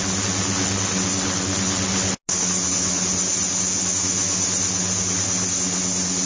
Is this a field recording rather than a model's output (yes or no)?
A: yes